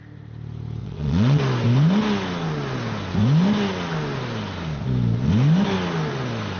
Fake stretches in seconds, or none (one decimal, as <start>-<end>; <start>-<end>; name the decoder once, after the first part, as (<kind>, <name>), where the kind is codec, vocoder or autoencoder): 0.8-1.4 (vocoder, WaveNeXt)